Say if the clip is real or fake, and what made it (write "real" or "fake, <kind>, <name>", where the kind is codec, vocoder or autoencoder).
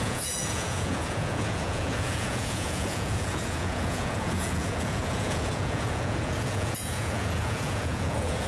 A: fake, vocoder, Vocos